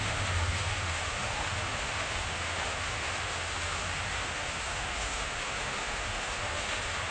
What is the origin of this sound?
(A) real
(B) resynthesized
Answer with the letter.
B